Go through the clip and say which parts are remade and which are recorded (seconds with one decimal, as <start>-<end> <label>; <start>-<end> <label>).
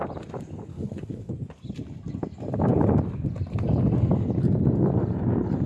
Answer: 0.0-0.7 recorded; 0.7-1.3 remade; 1.3-5.7 recorded